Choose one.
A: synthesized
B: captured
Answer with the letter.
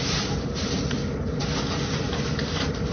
B